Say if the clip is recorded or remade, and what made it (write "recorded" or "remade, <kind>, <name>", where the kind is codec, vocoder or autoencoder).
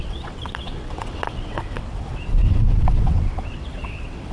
remade, vocoder, WaveNeXt